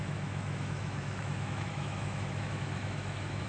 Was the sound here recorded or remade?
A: remade